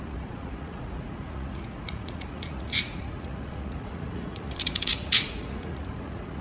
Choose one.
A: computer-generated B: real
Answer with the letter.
A